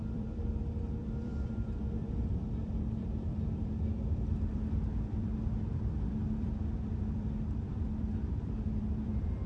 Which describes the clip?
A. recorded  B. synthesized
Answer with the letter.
B